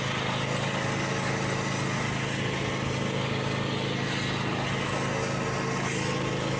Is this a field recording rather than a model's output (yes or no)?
yes